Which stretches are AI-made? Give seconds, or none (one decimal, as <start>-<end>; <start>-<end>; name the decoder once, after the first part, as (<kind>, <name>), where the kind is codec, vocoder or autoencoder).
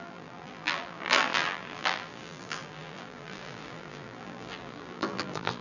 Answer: 0.0-5.6 (vocoder, BigVGAN v2)